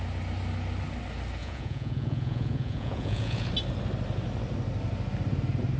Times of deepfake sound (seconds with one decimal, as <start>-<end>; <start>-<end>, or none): 1.4-3.5